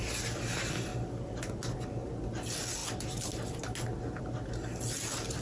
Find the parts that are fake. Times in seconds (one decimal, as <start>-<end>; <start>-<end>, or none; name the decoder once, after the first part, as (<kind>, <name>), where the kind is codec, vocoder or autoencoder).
none